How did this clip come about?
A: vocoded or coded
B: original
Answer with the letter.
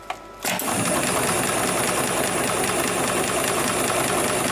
B